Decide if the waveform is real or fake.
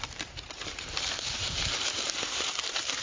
fake